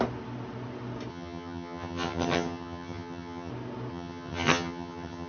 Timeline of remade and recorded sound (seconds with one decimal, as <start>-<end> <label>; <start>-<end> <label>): 0.0-1.1 recorded; 1.1-3.5 remade; 3.5-3.9 recorded; 3.9-5.3 remade